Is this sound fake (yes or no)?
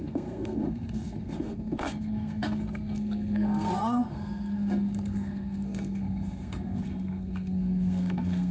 yes